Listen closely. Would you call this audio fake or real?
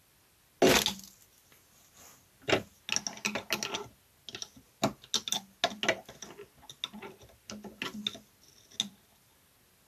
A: real